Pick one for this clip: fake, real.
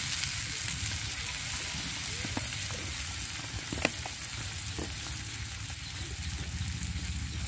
real